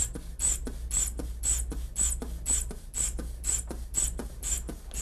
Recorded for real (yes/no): yes